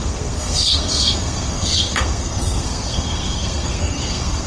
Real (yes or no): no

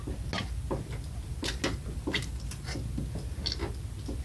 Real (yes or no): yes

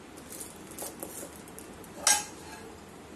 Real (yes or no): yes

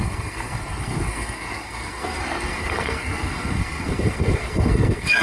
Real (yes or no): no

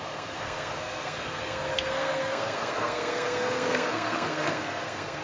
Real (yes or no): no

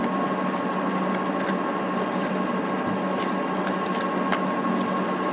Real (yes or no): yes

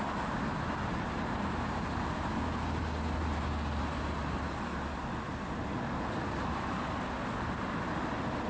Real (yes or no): yes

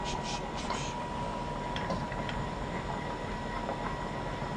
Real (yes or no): yes